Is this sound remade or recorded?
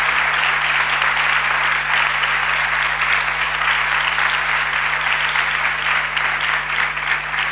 recorded